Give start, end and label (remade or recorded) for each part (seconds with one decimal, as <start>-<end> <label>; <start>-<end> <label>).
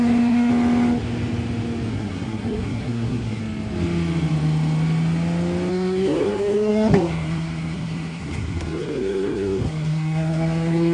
0.0-0.5 remade; 0.5-1.9 recorded; 1.9-3.4 remade; 3.4-5.7 recorded; 5.7-10.9 remade